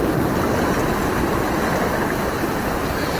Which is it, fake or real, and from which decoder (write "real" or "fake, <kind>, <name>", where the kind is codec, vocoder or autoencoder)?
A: real